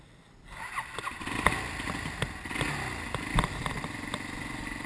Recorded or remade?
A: recorded